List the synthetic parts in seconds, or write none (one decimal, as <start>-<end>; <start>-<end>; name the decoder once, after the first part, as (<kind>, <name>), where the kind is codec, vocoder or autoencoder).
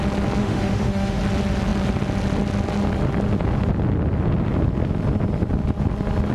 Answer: 0.4-1.2 (autoencoder, DAC-VAE)